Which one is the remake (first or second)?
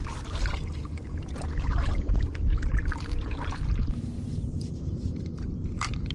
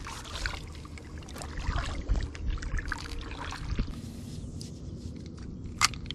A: first